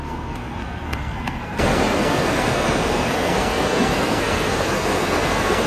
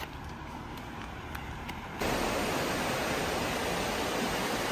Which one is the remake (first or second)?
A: first